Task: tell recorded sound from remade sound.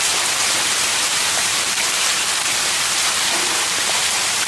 remade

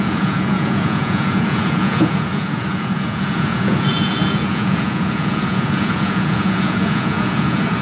remade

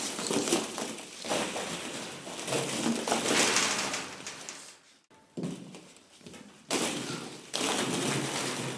recorded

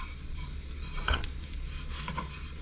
remade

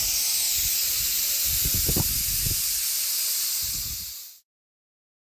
recorded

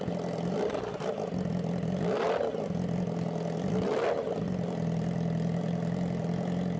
recorded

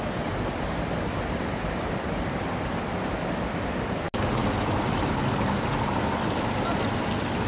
recorded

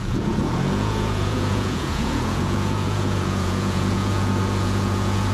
remade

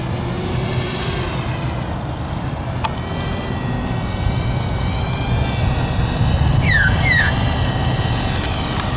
recorded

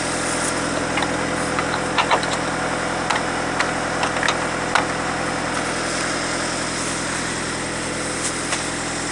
recorded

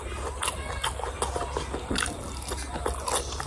recorded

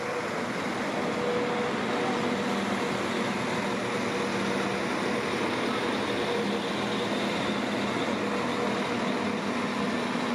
recorded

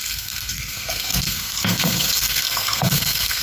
remade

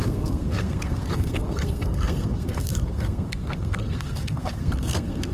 remade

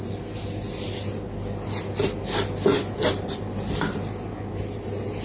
recorded